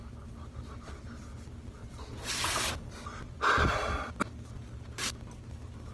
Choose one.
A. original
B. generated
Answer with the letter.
A